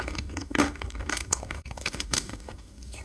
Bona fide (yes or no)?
no